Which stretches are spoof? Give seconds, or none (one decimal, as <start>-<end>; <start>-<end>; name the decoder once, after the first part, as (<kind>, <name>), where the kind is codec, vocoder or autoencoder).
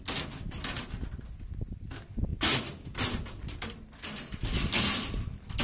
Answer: none